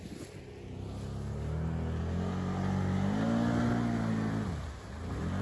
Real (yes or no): yes